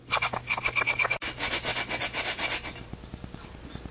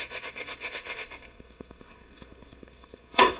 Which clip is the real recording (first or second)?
first